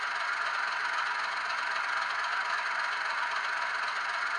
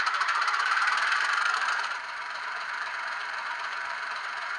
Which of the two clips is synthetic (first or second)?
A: second